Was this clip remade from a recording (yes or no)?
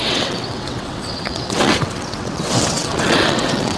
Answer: yes